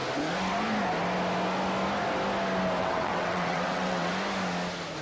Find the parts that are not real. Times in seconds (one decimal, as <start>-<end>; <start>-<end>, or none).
2.8-4.1